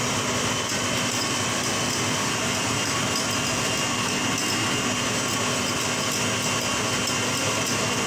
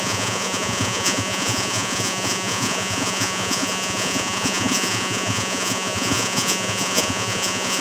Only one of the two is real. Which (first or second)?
first